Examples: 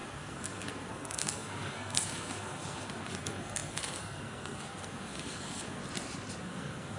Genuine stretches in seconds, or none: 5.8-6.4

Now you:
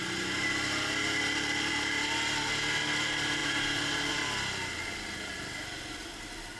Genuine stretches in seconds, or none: 0.0-6.6

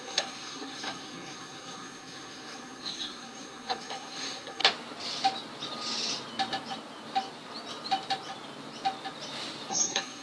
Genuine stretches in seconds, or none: 4.6-9.7

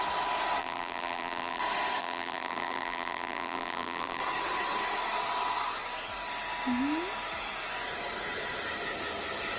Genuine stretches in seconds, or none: 0.0-0.6; 1.6-2.0; 4.2-9.6

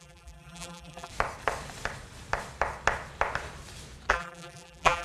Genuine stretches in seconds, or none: 1.1-4.1